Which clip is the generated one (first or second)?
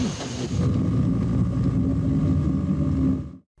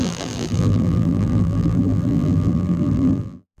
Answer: second